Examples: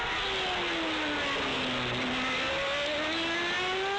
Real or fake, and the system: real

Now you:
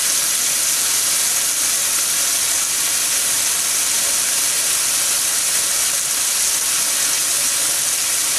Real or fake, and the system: real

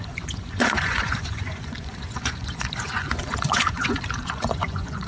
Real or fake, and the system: fake, vocoder, Vocos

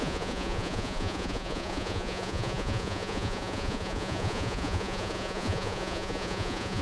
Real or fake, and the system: fake, vocoder, Vocos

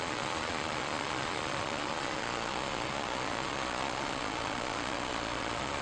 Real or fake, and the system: fake, vocoder, Vocos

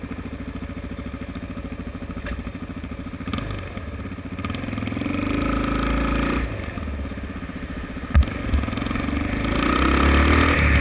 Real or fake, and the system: real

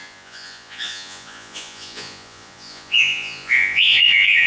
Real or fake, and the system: fake, vocoder, Vocos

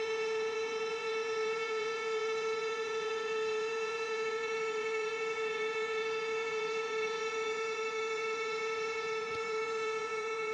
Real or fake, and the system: fake, vocoder, Vocos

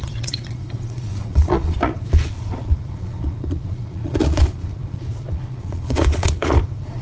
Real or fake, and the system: fake, vocoder, Vocos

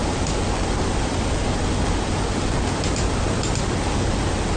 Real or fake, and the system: real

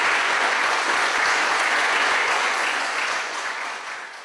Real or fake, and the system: fake, vocoder, Vocos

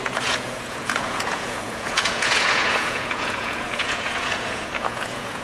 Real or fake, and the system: fake, vocoder, Vocos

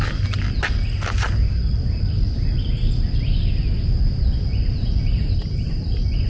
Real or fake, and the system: real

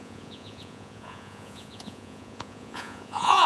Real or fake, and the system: fake, vocoder, Vocos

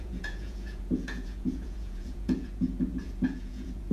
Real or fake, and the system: fake, vocoder, Vocos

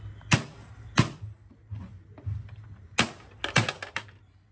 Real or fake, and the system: real